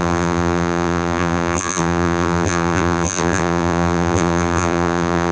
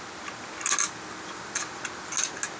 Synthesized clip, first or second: first